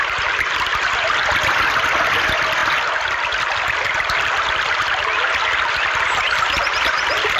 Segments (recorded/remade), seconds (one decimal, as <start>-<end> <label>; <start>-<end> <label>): 0.0-7.4 recorded